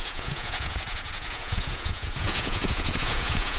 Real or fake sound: fake